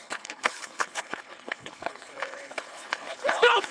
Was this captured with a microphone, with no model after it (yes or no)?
no